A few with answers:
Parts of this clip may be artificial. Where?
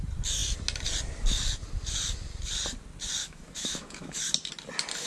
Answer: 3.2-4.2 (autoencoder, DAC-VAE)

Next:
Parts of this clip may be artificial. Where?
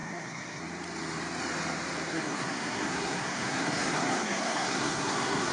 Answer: 0.0-0.6 (codec, SNAC); 2.1-5.5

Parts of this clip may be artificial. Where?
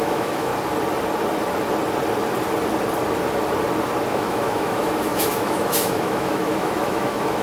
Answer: 0.0-0.5 (autoencoder, DAC-VAE); 4.1-7.4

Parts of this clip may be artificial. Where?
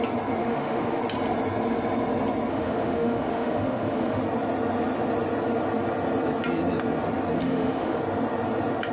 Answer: 0.4-1.0 (autoencoder, DAC-VAE); 2.5-4.2; 7.4-8.0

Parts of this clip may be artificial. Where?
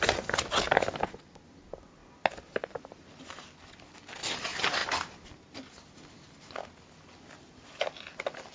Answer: 4.8-5.7 (vocoder, BigVGAN v2)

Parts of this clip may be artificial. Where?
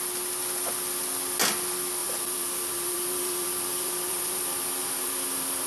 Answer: 2.0-5.7 (vocoder, BigVGAN v2)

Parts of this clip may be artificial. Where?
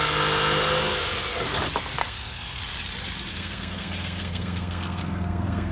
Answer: 2.0-2.6 (codec, SNAC); 3.3-5.7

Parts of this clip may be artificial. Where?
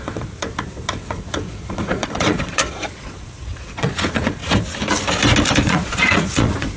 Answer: 0.0-4.4 (vocoder, Vocos); 5.6-6.8